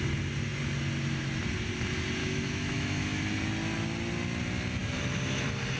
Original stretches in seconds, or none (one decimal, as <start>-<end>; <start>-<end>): 0.0-2.2; 3.2-5.8